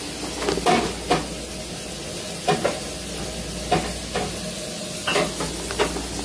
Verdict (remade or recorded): recorded